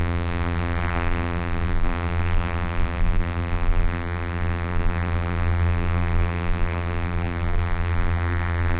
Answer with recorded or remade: remade